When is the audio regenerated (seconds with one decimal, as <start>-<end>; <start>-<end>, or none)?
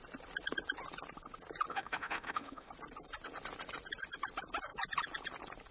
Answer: 1.7-2.7